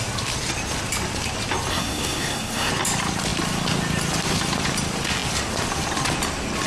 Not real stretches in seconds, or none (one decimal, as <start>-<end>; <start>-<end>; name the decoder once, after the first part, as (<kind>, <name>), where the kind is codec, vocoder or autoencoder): 1.7-2.7 (codec, SNAC)

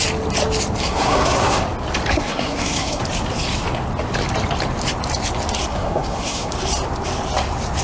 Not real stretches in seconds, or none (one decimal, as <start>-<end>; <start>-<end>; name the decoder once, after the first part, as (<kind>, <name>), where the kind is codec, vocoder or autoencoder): 0.8-1.6 (codec, SNAC); 2.1-3.0; 5.7-6.5